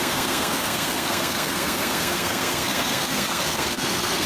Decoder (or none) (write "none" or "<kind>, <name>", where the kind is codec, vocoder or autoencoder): codec, SNAC